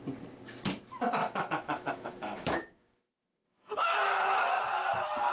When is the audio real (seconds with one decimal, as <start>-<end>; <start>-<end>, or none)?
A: 0.0-1.2; 3.7-5.3